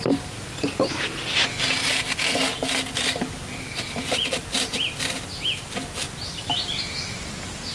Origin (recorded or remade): recorded